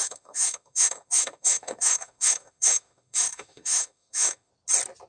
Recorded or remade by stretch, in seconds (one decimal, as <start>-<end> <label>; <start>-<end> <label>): 0.0-4.5 remade; 4.5-5.1 recorded